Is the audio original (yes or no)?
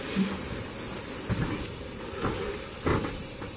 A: yes